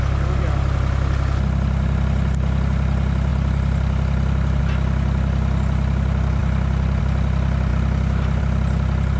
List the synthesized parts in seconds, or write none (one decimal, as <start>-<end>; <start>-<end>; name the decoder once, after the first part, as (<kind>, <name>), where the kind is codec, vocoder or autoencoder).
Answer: 3.3-4.6 (vocoder, BigVGAN v2)